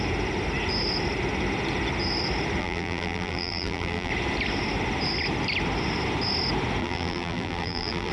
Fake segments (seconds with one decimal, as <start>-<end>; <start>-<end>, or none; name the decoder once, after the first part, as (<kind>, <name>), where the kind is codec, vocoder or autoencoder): 2.6-4.1 (vocoder, BigVGAN v2); 6.8-8.1